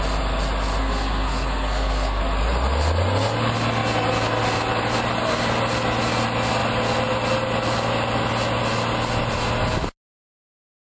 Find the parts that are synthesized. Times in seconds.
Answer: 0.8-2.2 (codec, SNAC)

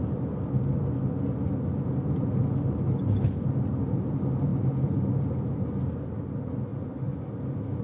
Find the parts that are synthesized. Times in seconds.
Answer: none

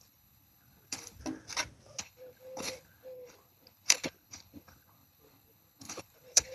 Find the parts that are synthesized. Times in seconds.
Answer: 0.0-1.2 (codec, HILCodec); 2.0-6.5

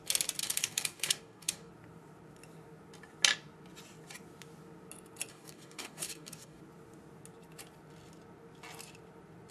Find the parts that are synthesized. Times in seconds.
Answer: 0.4-1.7 (codec, DAC); 5.3-6.6

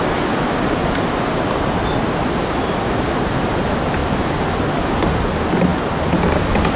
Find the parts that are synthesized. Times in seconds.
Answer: 0.8-1.8 (vocoder, BigVGAN v2)

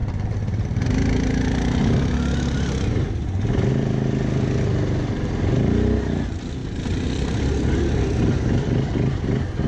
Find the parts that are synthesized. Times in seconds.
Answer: none